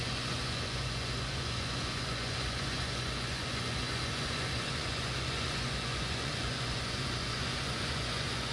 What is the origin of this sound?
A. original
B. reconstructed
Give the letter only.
B